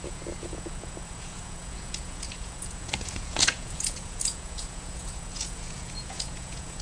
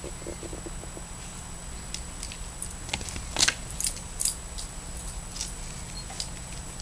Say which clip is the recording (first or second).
second